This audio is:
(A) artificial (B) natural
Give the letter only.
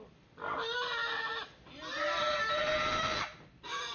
B